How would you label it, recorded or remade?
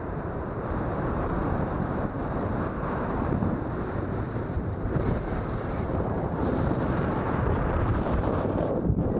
remade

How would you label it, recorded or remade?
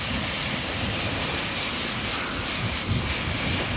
recorded